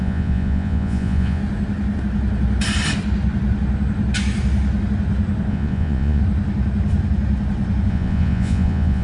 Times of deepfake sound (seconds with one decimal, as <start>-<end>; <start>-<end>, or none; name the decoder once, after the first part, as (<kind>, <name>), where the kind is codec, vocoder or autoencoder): 0.0-1.4 (vocoder, Vocos); 5.5-6.2; 7.9-9.0